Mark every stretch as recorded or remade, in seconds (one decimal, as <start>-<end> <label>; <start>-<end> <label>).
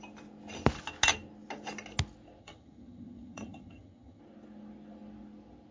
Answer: 0.0-2.4 recorded; 2.4-4.2 remade; 4.2-5.7 recorded